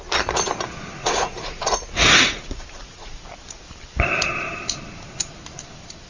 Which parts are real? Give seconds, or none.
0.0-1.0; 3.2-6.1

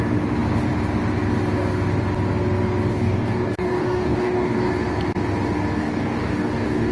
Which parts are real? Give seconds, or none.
0.0-2.9; 4.7-5.8

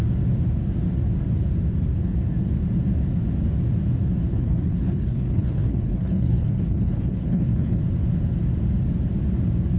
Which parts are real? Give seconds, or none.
0.0-4.3; 7.8-9.8